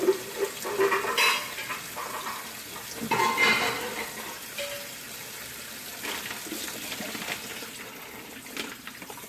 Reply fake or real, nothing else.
real